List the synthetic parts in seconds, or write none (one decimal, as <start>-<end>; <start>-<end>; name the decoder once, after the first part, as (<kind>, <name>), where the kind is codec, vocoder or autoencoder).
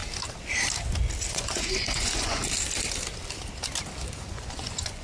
1.3-2.4 (vocoder, Vocos); 4.3-5.0